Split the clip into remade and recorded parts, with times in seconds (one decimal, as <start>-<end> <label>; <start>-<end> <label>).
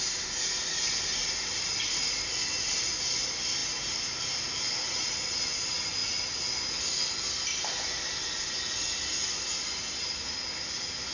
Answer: 0.0-1.2 recorded; 1.2-2.9 remade; 2.9-11.1 recorded